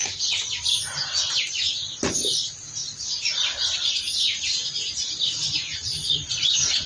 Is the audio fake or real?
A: real